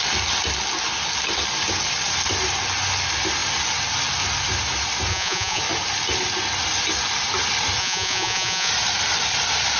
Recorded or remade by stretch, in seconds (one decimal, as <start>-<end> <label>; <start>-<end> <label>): 0.0-5.1 recorded; 5.1-5.6 remade; 5.6-7.8 recorded; 7.8-8.7 remade; 8.7-9.8 recorded